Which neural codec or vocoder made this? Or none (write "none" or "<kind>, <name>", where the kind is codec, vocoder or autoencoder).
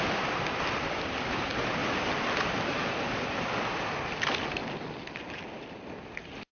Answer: none